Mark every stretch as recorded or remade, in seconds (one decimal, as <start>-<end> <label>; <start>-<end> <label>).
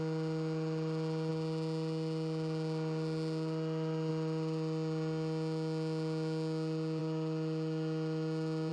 0.0-8.7 recorded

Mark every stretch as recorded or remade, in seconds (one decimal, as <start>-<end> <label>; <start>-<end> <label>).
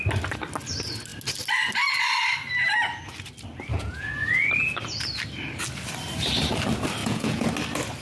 0.0-3.7 recorded; 3.7-4.5 remade; 4.5-7.0 recorded; 7.0-7.5 remade; 7.5-8.0 recorded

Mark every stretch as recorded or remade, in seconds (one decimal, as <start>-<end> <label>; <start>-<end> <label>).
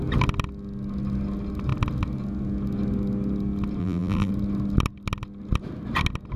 0.0-3.8 recorded; 3.8-4.3 remade; 4.3-6.4 recorded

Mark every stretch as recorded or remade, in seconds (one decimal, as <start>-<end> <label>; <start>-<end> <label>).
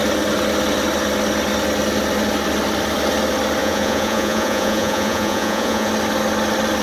0.0-3.6 recorded; 3.6-5.9 remade; 5.9-6.8 recorded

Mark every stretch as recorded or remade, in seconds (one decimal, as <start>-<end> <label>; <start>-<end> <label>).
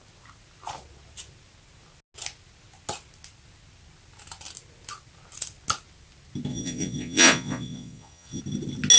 0.0-6.5 recorded; 6.5-8.4 remade; 8.4-9.0 recorded